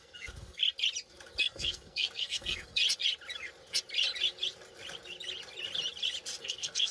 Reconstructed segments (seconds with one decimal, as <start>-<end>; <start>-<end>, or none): 0.0-0.6; 1.4-2.8; 6.4-6.9